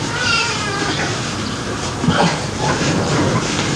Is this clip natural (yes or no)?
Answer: no